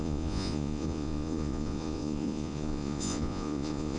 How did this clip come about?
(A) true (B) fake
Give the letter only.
B